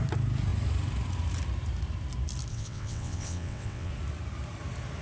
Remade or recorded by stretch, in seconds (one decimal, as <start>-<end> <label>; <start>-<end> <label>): 0.0-2.5 recorded; 2.5-3.9 remade; 3.9-5.0 recorded